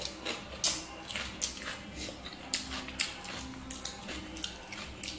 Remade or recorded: recorded